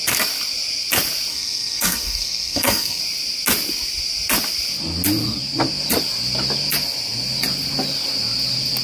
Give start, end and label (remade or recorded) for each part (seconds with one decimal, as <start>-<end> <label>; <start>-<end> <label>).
0.0-1.3 recorded; 1.3-3.0 remade; 3.0-8.8 recorded